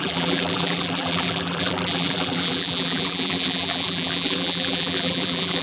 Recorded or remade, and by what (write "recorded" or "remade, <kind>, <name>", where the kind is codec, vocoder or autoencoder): remade, vocoder, BigVGAN v2